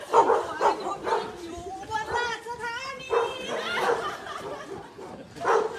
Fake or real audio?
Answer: real